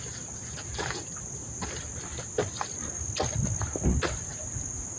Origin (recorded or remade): recorded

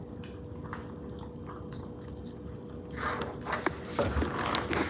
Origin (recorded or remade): recorded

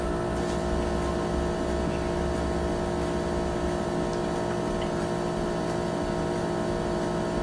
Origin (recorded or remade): recorded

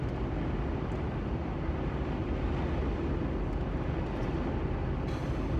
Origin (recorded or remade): recorded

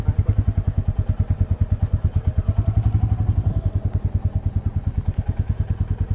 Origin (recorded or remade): recorded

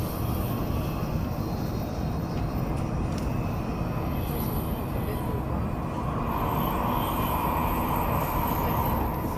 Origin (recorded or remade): recorded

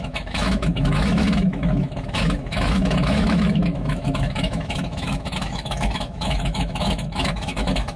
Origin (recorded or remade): remade